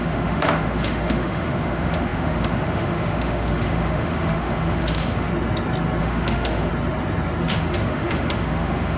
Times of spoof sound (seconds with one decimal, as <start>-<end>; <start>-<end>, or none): 0.0-5.3; 6.0-6.7; 7.5-9.0